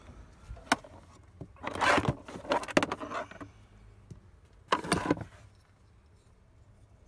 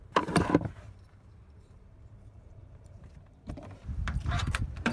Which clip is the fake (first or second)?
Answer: second